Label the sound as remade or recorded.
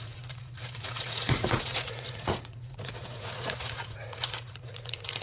remade